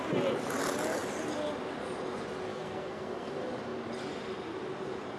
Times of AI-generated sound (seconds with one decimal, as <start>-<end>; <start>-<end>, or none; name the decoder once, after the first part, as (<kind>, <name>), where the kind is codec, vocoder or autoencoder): 2.5-3.3 (codec, SNAC)